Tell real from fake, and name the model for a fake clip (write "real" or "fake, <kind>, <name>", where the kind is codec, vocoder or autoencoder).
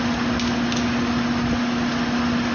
real